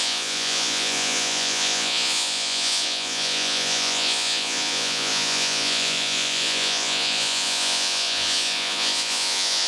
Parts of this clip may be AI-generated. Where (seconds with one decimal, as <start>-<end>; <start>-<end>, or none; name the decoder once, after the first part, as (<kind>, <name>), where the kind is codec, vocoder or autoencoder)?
0.0-9.7 (vocoder, Vocos)